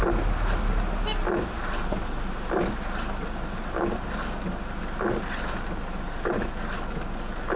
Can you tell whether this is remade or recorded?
recorded